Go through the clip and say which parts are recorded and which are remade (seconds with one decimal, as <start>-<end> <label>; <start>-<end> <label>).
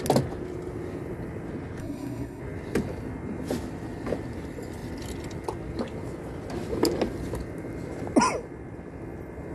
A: 0.0-1.8 recorded; 1.8-2.4 remade; 2.4-9.5 recorded